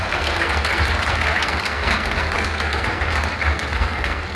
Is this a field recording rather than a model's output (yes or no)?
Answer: no